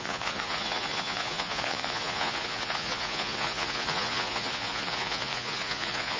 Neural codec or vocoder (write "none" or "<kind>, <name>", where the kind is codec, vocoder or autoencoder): vocoder, Vocos